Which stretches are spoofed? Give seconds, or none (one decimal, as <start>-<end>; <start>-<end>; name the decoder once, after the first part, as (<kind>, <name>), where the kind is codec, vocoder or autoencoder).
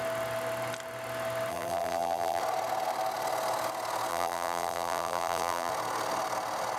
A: 1.5-2.4 (vocoder, BigVGAN v2); 4.1-5.7